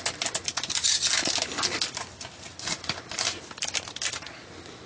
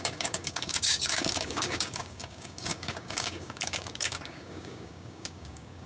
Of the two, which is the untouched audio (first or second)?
first